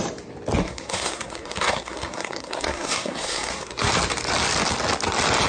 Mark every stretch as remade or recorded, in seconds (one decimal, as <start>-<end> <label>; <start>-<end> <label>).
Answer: 0.0-0.6 recorded; 0.6-3.9 remade; 3.9-5.5 recorded